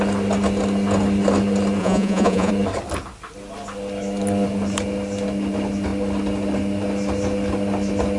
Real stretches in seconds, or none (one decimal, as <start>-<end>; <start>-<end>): 0.0-1.8; 2.5-8.2